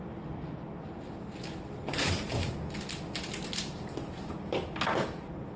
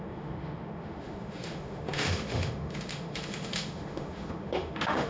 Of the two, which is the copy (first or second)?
second